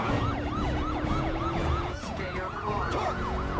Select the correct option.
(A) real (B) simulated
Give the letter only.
B